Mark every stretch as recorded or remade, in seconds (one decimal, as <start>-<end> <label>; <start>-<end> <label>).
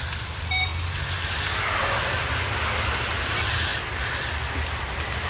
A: 0.0-0.7 remade; 0.7-1.6 recorded; 1.6-5.3 remade